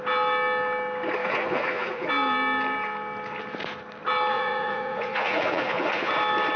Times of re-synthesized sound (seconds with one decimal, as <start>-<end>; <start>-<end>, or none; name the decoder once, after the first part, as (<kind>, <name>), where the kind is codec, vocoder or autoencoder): 1.2-2.1 (vocoder, Vocos); 4.3-6.1